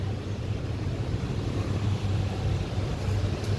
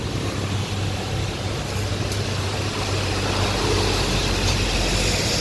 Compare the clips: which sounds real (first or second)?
second